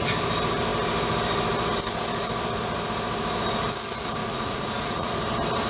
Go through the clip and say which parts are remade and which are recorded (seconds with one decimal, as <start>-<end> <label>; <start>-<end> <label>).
0.0-4.2 recorded; 4.2-5.1 remade; 5.1-5.7 recorded